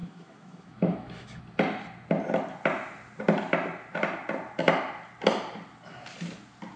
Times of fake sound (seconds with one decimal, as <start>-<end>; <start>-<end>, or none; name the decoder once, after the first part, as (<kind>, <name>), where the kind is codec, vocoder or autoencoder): 0.0-1.4 (autoencoder, DAC-VAE)